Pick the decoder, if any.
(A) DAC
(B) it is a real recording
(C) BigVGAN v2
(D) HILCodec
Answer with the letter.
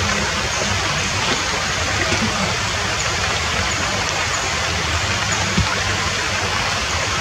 B